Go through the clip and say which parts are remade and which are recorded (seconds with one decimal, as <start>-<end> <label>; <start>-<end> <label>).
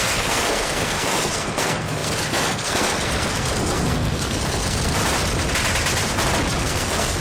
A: 0.0-5.0 remade; 5.0-6.6 recorded; 6.6-7.2 remade